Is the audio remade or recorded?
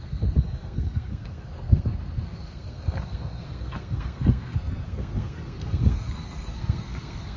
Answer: remade